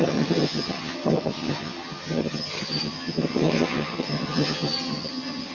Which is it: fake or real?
fake